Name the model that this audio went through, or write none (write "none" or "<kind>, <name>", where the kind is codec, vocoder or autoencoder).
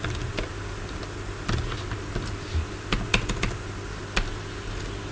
none